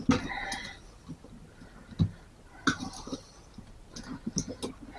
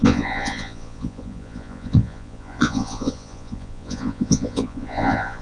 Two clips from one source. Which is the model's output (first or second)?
second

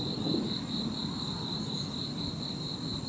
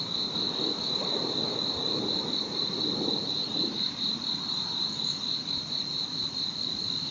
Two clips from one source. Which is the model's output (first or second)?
second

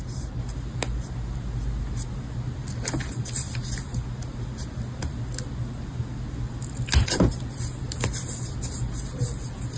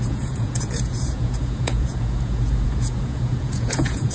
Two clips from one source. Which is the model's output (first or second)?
second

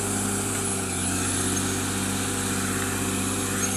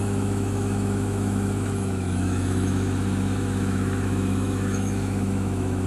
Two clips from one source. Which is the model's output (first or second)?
second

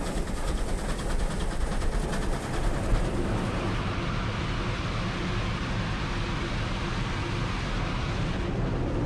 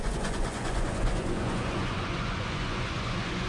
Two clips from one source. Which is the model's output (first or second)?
second